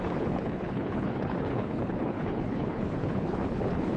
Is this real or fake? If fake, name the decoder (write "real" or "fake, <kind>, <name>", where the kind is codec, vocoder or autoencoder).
fake, codec, HILCodec